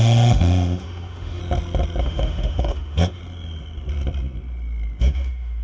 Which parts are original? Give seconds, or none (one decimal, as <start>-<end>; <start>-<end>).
1.4-2.0; 3.2-5.0